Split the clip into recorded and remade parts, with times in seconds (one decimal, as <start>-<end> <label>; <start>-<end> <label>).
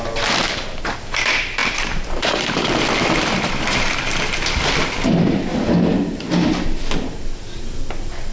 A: 0.0-1.6 recorded; 1.6-3.5 remade; 3.5-8.3 recorded